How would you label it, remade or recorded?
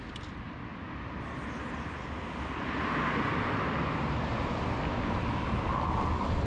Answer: recorded